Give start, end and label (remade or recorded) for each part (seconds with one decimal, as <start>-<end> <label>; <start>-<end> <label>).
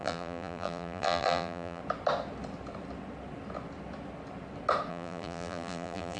0.0-1.8 remade; 1.8-4.9 recorded; 4.9-6.2 remade